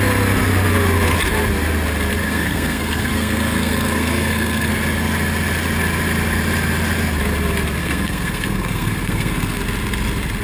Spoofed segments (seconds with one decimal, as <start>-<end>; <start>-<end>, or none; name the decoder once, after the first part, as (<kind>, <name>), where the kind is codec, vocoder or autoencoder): 2.2-4.7 (codec, SNAC); 7.8-9.6

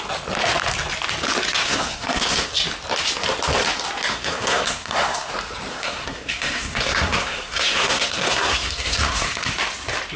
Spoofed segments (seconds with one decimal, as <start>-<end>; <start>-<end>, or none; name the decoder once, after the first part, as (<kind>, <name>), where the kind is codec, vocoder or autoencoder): 1.6-2.5 (codec, SNAC); 4.1-5.3; 5.7-9.5

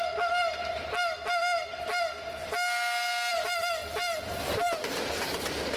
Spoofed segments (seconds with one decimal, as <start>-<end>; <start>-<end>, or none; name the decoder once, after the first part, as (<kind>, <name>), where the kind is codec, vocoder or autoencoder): none

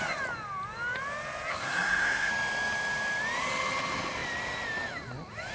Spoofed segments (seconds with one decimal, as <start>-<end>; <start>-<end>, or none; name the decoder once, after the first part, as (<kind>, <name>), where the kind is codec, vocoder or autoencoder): 1.5-2.3 (codec, SNAC)

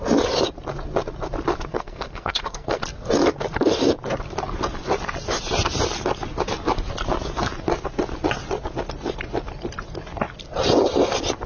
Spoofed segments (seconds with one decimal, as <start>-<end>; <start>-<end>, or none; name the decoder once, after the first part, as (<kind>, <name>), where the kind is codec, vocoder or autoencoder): 1.7-2.8 (codec, SNAC)